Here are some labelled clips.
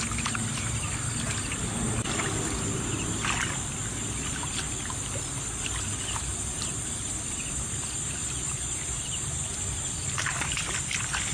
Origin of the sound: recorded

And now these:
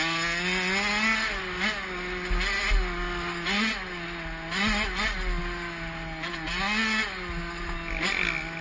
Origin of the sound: recorded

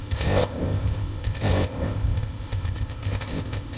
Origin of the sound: remade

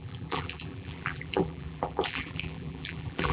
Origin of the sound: remade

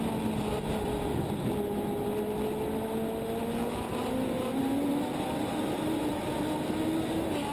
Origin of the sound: recorded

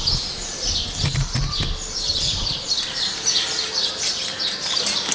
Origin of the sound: recorded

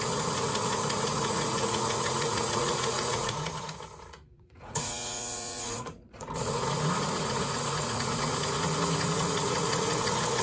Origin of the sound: remade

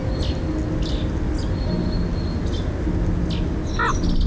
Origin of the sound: recorded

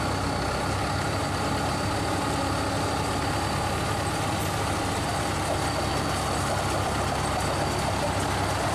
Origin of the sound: recorded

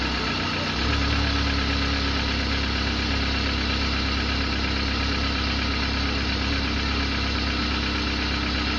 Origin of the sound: recorded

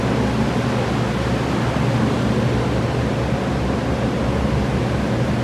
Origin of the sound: recorded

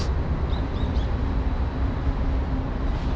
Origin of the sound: recorded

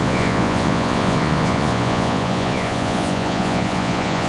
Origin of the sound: remade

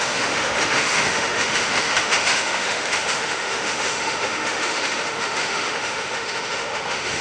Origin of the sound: remade